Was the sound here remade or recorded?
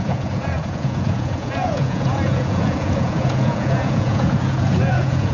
remade